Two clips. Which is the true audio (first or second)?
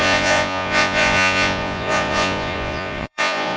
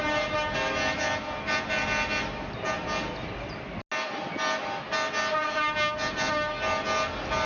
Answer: second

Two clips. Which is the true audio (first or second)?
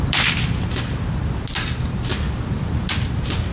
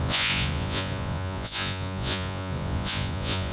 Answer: first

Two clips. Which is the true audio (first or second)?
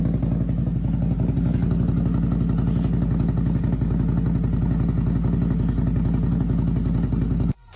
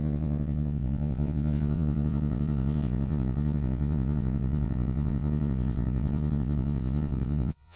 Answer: first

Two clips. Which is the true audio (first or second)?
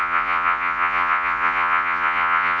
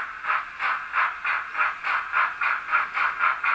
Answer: second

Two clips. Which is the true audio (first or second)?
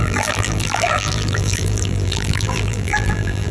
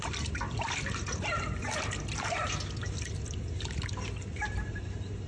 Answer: second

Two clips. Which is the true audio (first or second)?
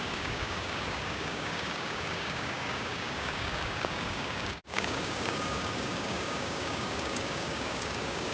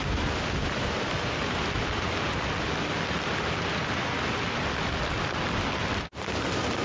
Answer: second